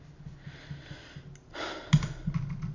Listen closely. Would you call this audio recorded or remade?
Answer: recorded